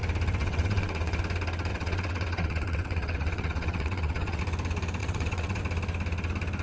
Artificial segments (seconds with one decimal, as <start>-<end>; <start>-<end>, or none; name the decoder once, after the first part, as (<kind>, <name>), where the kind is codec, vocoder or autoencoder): 0.4-1.2 (vocoder, WaveNeXt); 1.7-4.4; 5.0-5.6